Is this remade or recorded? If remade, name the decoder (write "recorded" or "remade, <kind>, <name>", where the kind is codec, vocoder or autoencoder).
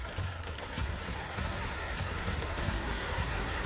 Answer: remade, codec, SNAC